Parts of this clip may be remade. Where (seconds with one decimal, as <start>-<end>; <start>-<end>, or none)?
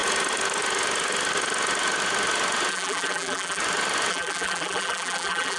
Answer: 2.7-3.6; 4.1-5.6